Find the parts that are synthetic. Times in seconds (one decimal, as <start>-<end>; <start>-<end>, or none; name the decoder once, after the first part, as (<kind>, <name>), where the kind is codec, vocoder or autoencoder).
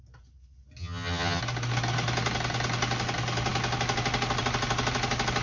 0.8-1.4 (vocoder, HiFi-GAN)